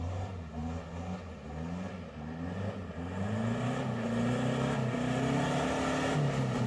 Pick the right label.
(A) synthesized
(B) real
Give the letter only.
B